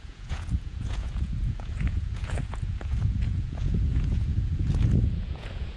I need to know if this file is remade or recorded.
remade